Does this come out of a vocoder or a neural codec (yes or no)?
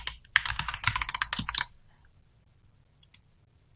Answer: no